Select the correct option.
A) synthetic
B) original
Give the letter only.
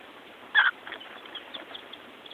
B